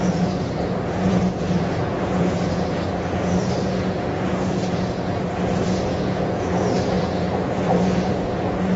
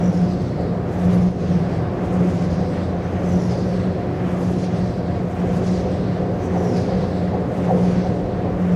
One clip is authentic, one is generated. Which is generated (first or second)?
first